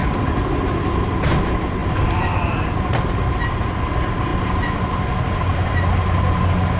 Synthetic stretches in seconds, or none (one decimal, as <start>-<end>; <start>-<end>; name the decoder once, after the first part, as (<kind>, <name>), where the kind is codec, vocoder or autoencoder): 1.8-3.0 (vocoder, BigVGAN v2)